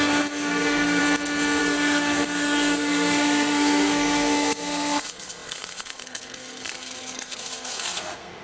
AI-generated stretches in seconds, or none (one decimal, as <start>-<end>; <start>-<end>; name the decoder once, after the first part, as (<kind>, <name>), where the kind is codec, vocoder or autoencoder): 0.0-1.0 (codec, SNAC); 1.6-8.4